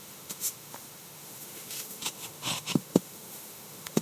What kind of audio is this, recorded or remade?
remade